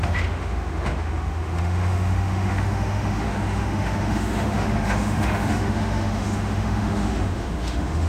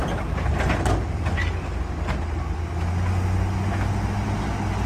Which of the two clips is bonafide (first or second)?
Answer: second